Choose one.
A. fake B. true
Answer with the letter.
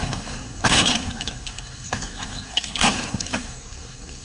A